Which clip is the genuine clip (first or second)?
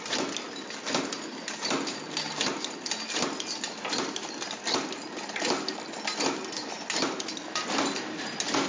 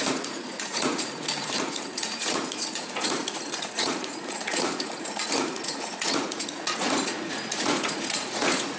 first